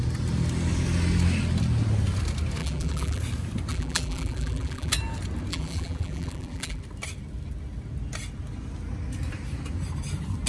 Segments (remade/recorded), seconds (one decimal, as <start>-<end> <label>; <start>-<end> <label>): 0.0-2.6 recorded; 2.6-3.2 remade; 3.2-3.7 recorded; 3.7-4.9 remade; 4.9-5.5 recorded; 5.5-6.8 remade; 6.8-10.5 recorded